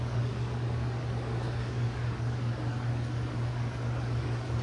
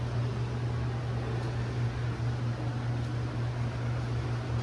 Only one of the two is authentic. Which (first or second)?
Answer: second